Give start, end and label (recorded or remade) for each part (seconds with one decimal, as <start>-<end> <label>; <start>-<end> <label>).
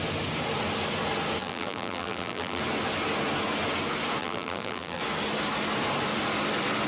0.0-1.4 recorded; 1.4-2.6 remade; 2.6-4.2 recorded; 4.2-5.0 remade; 5.0-6.9 recorded